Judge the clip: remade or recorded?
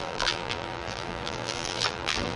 remade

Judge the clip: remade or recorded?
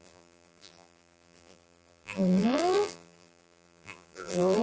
remade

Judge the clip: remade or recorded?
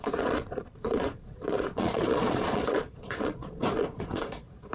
remade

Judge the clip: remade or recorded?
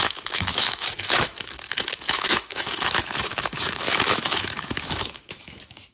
remade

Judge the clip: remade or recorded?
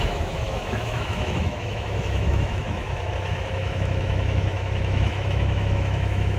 remade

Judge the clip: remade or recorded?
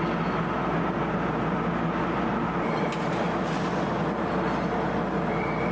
recorded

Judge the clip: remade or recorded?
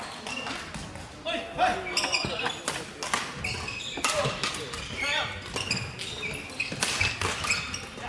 recorded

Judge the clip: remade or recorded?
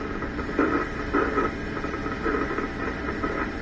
recorded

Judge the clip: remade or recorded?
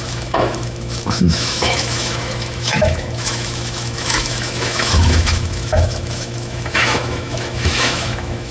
remade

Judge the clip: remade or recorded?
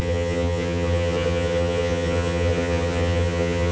remade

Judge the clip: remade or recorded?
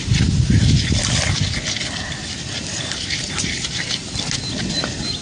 recorded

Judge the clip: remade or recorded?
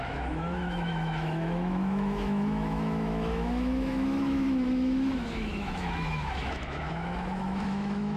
remade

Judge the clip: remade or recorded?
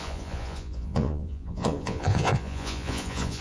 remade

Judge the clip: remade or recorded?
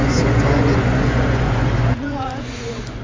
remade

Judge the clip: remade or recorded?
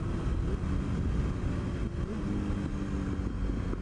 recorded